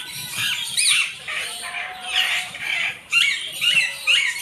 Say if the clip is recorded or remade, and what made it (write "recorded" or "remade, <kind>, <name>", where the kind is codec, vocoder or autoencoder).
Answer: remade, vocoder, BigVGAN v2